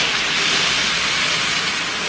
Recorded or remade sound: recorded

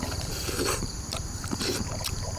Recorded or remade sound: remade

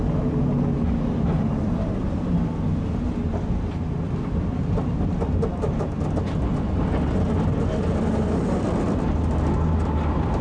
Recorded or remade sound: recorded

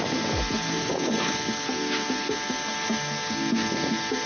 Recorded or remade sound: recorded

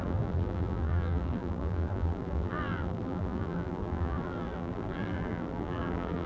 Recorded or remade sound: remade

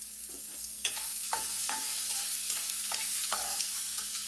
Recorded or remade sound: remade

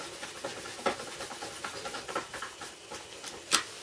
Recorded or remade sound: recorded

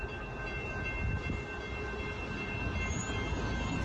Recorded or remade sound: recorded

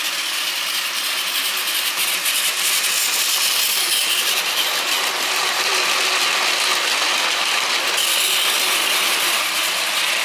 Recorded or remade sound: recorded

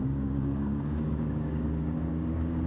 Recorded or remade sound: remade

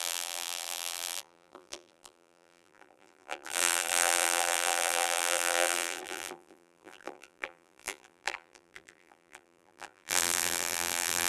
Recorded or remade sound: remade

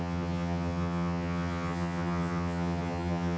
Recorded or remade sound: remade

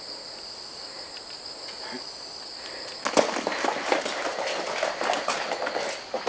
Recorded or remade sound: recorded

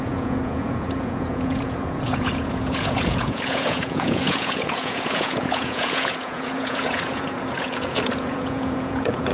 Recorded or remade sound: remade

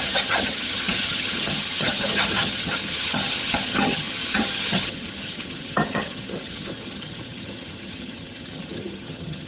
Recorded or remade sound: remade